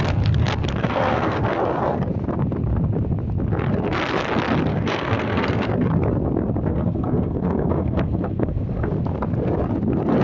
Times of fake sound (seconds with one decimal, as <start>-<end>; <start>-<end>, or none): 0.8-1.4; 4.7-5.7; 6.7-8.9